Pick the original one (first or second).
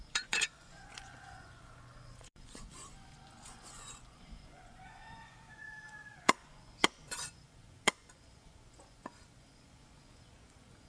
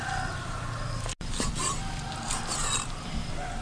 second